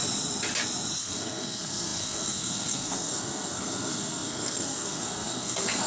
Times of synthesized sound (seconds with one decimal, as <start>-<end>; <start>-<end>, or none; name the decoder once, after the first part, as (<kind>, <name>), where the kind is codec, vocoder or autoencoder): 1.0-5.9 (codec, SNAC)